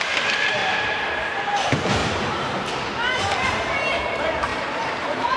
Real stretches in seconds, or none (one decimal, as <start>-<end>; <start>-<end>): 0.0-0.6; 1.1-2.0; 2.7-4.5